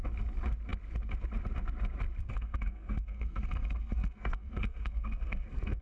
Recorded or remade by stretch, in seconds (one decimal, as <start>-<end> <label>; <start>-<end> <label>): 0.0-2.2 recorded; 2.2-5.8 remade